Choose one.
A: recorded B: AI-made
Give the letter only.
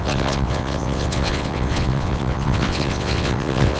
B